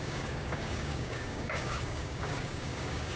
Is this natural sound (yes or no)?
no